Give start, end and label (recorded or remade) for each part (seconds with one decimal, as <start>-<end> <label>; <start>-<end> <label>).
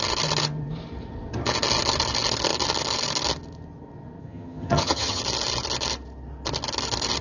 0.0-4.2 recorded; 4.2-5.2 remade; 5.2-7.2 recorded